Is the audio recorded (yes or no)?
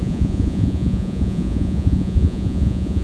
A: no